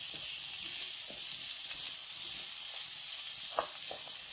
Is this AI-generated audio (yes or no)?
no